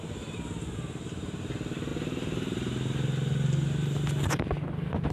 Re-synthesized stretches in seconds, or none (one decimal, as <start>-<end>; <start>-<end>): none